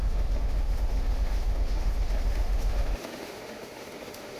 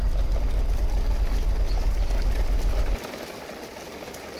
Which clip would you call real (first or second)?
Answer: second